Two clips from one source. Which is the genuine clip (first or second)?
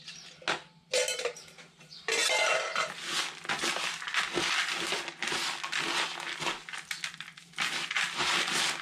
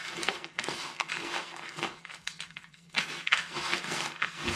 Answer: first